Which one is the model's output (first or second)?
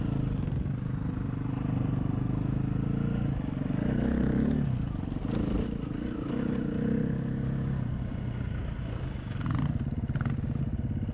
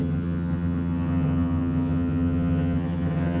second